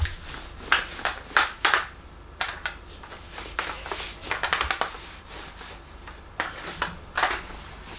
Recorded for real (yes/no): yes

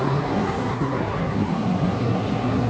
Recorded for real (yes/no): no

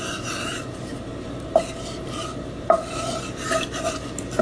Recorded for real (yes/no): yes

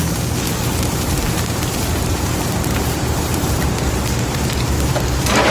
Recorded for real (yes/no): no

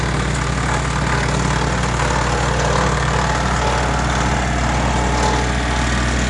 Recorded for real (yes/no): yes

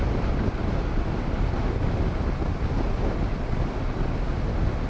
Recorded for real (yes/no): yes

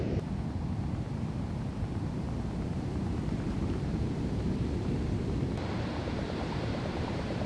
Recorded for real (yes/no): no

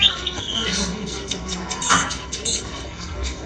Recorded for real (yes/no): no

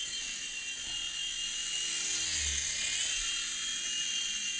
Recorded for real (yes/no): yes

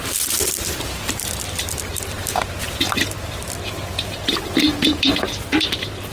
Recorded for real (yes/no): yes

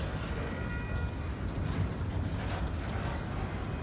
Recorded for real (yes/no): yes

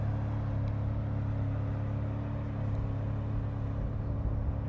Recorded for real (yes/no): yes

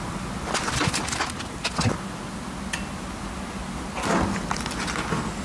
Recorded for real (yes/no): yes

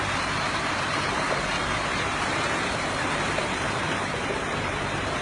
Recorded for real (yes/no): no